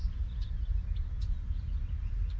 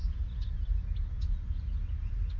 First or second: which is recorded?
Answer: second